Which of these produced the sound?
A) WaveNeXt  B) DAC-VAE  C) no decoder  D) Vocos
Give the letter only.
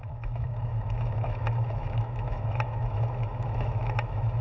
B